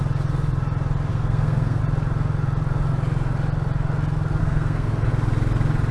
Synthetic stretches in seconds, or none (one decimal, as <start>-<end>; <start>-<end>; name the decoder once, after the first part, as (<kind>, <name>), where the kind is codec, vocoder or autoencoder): 1.1-1.8 (codec, SNAC); 4.4-5.1